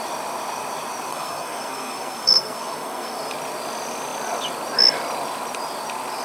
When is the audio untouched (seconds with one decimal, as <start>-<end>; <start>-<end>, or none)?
0.0-1.1; 3.2-6.2